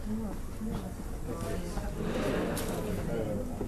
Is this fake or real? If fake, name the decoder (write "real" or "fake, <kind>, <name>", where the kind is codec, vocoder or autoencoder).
real